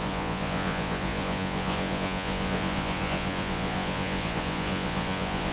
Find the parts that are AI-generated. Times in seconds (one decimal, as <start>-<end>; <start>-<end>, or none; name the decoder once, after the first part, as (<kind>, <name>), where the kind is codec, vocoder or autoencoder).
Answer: 0.0-5.5 (vocoder, Vocos)

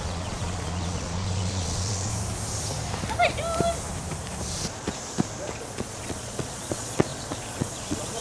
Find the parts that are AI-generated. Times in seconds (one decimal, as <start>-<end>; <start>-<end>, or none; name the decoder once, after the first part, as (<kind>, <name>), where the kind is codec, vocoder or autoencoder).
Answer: 0.0-2.1 (vocoder, Vocos); 5.6-8.2